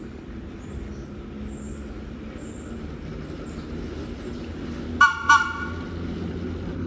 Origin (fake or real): real